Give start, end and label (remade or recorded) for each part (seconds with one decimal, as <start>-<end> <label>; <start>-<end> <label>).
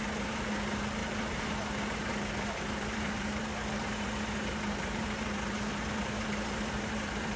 0.0-7.4 remade